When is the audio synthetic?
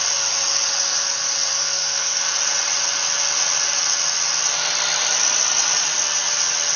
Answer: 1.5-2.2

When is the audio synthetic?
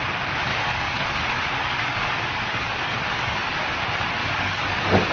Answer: 0.5-3.6; 4.2-5.1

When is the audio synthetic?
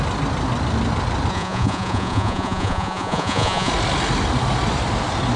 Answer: 1.3-3.7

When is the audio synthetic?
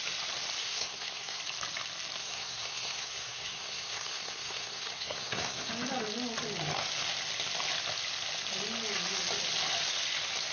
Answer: 0.6-1.4; 2.2-5.7